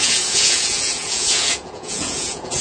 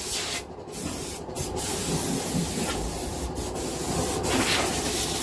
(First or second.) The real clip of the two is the second